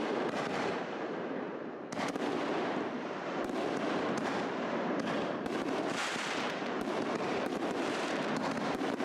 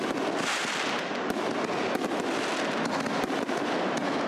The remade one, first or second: first